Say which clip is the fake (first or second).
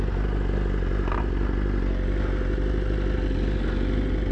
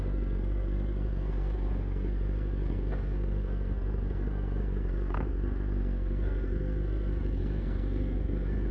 second